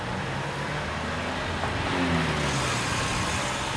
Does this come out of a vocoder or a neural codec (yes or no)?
no